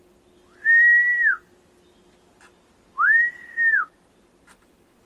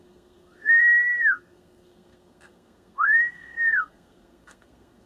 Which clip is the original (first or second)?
first